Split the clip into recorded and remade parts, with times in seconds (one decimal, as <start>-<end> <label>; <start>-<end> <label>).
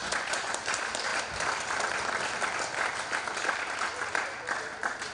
0.0-0.6 remade; 0.6-5.1 recorded